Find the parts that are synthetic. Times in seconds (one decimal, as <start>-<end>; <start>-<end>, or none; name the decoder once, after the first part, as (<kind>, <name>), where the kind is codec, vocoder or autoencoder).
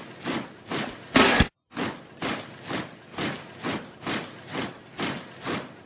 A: none